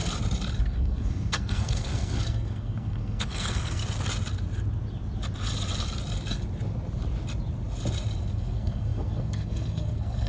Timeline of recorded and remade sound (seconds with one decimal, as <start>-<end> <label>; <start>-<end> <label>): 0.0-0.6 recorded; 0.6-3.8 remade; 3.8-8.3 recorded; 8.3-10.3 remade